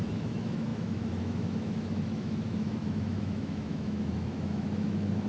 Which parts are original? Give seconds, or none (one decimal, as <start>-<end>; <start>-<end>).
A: none